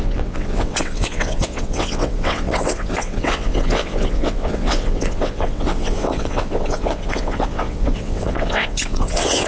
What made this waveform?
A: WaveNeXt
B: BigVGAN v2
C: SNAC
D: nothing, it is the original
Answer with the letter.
A